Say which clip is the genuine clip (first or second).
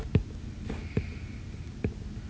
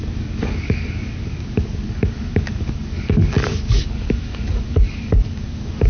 first